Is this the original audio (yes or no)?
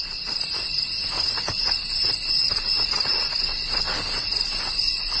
no